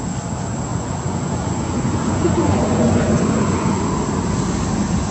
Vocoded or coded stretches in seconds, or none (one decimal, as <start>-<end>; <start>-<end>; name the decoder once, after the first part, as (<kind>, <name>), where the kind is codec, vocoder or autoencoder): 0.7-3.8 (vocoder, Vocos)